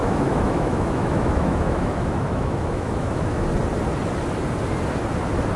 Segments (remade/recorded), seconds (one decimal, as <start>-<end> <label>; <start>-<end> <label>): 0.0-3.4 remade; 3.4-5.6 recorded